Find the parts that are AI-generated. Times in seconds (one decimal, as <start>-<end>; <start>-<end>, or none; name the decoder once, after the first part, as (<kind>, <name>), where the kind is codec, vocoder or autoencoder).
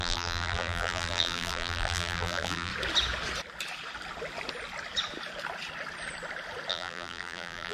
0.0-2.7 (vocoder, BigVGAN v2); 6.7-7.7